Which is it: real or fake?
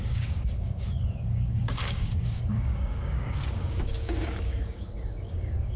fake